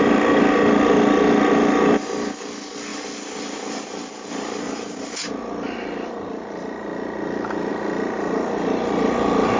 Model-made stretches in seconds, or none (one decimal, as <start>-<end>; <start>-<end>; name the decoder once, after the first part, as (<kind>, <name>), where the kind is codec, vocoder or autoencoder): none